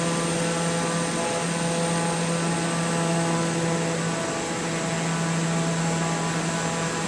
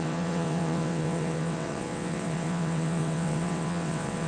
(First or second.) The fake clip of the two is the second